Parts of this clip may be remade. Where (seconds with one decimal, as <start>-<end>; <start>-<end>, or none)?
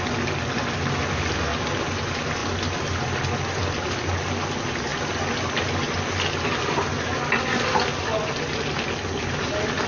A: none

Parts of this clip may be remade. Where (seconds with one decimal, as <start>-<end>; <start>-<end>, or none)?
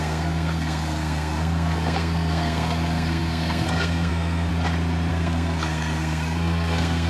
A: 0.0-4.5; 5.1-7.1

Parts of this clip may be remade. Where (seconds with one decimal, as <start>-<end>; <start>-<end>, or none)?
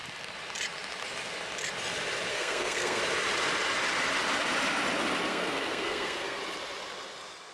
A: 2.3-3.0; 5.3-6.4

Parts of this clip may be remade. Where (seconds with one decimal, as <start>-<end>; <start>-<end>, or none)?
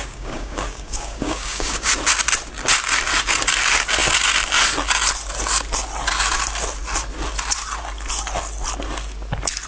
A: 0.0-1.9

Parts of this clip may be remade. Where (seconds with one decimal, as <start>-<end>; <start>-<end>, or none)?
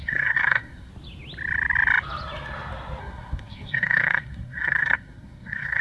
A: 0.0-0.9; 3.0-5.8